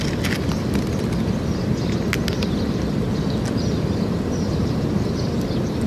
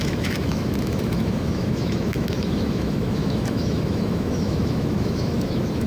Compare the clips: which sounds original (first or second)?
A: first